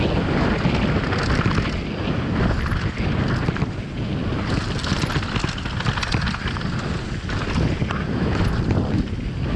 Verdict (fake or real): real